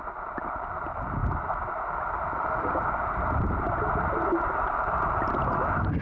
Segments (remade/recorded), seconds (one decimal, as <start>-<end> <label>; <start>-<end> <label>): 0.0-6.0 recorded